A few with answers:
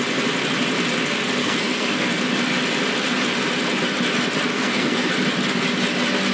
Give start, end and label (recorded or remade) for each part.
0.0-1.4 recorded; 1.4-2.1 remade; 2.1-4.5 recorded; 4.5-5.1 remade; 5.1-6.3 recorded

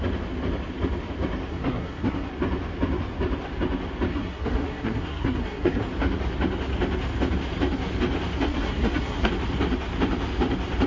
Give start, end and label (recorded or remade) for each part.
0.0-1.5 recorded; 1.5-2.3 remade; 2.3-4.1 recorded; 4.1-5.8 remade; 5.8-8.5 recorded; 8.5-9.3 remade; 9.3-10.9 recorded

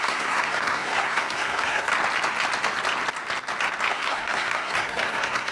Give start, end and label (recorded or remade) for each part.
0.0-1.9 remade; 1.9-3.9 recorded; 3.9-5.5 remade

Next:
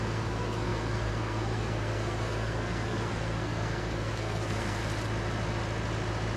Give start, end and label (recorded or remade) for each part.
0.0-4.8 remade; 4.8-6.4 recorded

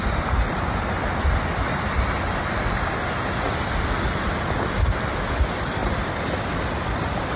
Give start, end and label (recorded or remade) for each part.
0.0-7.4 recorded

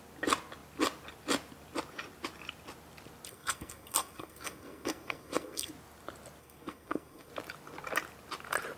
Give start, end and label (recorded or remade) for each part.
0.0-3.3 recorded; 3.3-5.7 remade; 5.7-6.4 recorded; 6.4-7.3 remade; 7.3-8.8 recorded

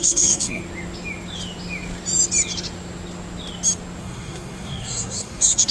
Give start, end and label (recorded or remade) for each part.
0.0-0.6 remade; 0.6-4.0 recorded; 4.0-5.7 remade

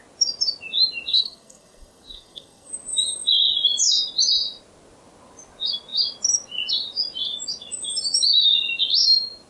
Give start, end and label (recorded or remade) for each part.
0.0-1.1 recorded; 1.1-2.7 remade; 2.7-9.5 recorded